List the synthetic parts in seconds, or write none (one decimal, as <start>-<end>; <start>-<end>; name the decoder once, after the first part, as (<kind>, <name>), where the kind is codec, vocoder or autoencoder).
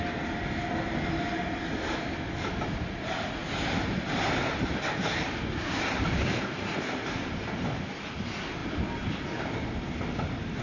3.4-7.2 (vocoder, BigVGAN v2)